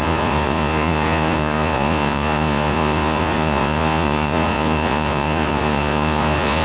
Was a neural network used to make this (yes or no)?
yes